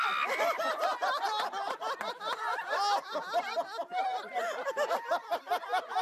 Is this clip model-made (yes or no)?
no